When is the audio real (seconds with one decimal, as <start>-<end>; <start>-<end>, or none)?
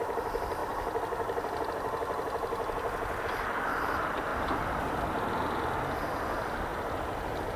0.0-4.3; 5.0-6.7